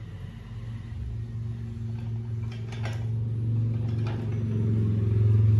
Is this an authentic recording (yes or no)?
yes